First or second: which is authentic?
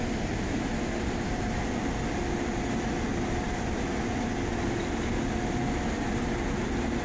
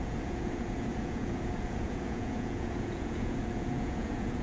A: first